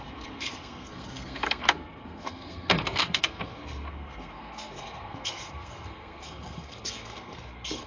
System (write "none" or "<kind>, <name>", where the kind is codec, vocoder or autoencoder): codec, SNAC